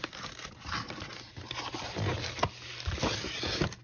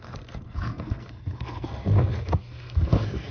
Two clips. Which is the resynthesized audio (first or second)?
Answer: second